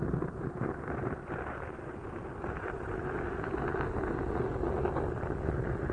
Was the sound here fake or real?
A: real